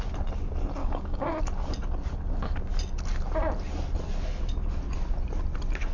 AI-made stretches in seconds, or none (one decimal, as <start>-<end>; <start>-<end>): 0.8-1.4